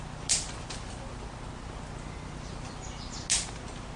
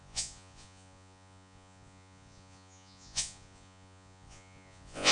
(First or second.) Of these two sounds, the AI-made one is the second